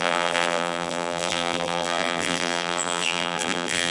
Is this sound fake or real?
fake